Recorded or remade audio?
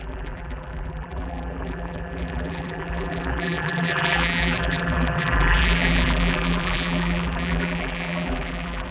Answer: remade